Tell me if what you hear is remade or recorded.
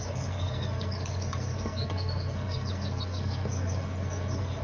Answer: remade